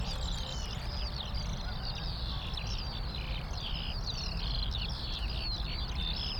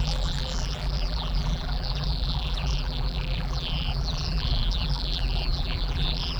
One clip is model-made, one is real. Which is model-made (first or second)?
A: second